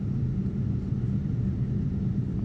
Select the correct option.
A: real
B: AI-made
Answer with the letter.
A